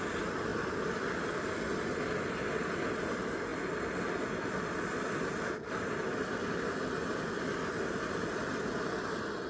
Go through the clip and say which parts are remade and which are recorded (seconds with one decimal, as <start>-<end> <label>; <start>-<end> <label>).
0.0-9.5 recorded